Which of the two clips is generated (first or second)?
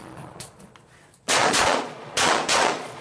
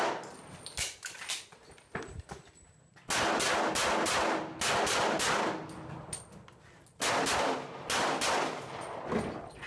first